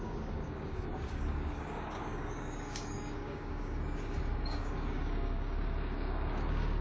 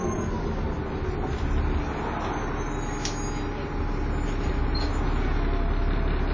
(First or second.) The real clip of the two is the second